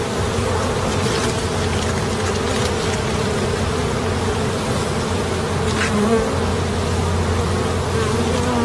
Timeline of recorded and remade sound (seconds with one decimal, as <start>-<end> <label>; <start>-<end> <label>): 0.0-2.6 recorded; 2.6-4.9 remade; 4.9-8.6 recorded